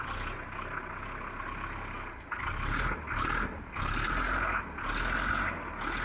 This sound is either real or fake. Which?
real